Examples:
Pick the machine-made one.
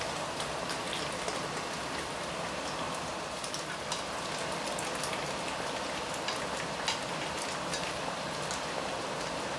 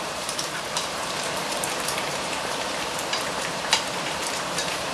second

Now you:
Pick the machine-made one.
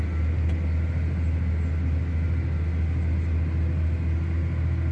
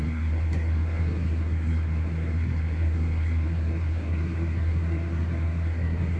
second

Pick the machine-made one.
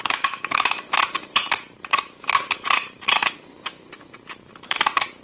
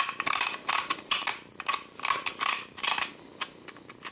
first